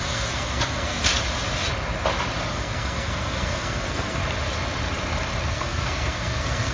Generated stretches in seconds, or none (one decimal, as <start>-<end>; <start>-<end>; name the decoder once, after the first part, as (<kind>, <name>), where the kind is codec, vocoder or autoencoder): 0.0-1.1 (codec, SNAC); 2.5-4.2; 5.5-6.7